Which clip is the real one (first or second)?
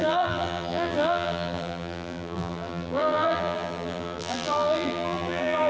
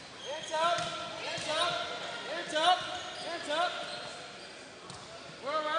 second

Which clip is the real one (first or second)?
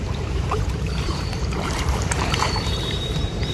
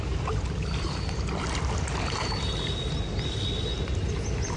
second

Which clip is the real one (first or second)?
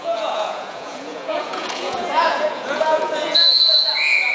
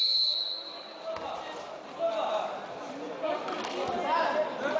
second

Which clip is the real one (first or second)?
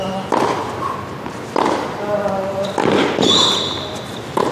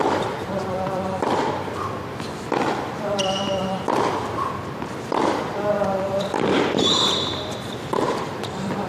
first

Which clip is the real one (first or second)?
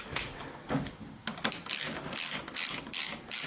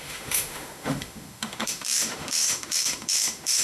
first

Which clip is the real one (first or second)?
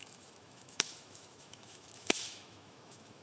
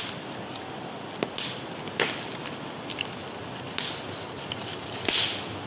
second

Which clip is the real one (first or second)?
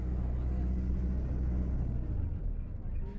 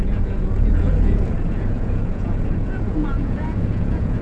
first